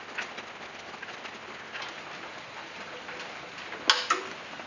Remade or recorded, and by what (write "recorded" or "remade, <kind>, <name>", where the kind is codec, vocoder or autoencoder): recorded